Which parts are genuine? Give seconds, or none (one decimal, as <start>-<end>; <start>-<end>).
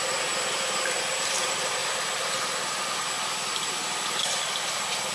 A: 0.0-5.1